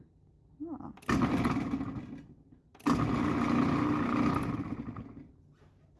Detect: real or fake real